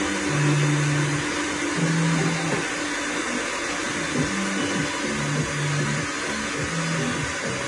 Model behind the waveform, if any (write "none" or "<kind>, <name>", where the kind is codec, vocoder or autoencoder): none